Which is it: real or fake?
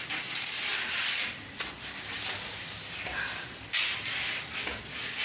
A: real